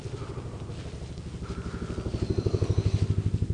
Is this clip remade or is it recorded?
recorded